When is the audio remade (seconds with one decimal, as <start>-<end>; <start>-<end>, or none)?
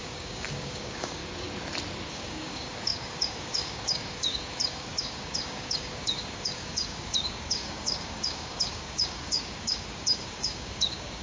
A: 0.0-1.2; 2.1-11.2